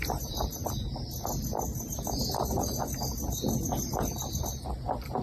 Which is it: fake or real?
real